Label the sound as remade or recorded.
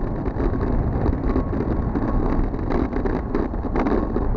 recorded